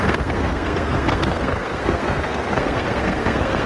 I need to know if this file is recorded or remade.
remade